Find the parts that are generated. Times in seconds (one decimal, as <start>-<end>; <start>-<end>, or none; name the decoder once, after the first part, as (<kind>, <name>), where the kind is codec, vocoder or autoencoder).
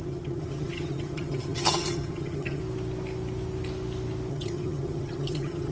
0.0-2.6 (vocoder, HiFi-GAN); 4.3-5.7